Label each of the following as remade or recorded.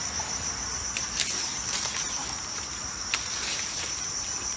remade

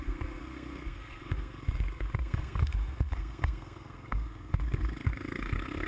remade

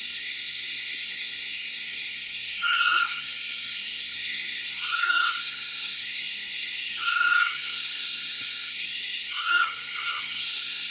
remade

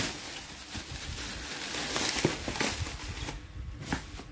recorded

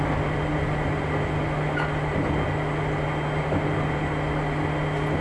recorded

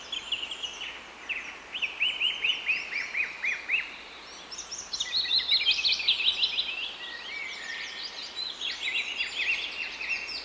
recorded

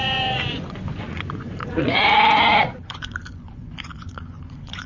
remade